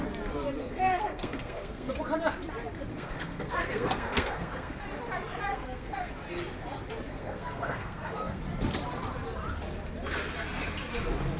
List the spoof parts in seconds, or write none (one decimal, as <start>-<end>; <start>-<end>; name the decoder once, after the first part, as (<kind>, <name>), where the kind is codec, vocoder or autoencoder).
0.6-1.9 (codec, SNAC); 2.9-4.8; 5.5-6.1; 7.1-8.4